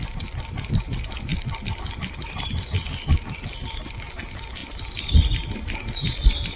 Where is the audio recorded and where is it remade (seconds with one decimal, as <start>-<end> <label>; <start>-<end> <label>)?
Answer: 0.0-1.3 recorded; 1.3-2.7 remade; 2.7-6.6 recorded